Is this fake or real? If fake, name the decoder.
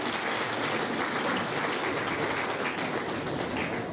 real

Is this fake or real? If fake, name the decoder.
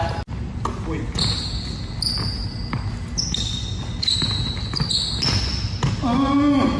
real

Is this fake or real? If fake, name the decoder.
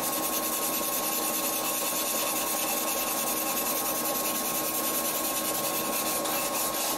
real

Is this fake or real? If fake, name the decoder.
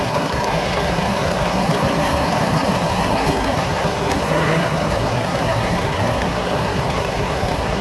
fake, codec, SNAC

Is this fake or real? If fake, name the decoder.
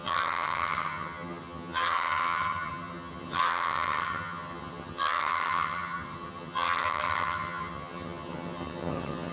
fake, vocoder, HiFi-GAN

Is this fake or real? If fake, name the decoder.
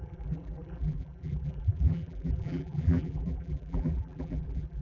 fake, vocoder, BigVGAN v2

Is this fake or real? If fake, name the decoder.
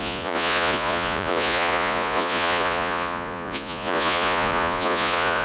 fake, vocoder, Vocos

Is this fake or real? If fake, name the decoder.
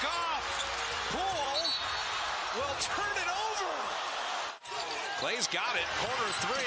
real